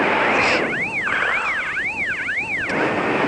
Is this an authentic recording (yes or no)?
yes